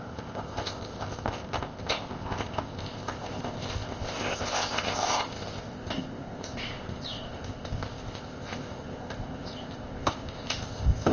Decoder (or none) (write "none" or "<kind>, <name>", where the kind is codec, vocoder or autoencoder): codec, ZipCodec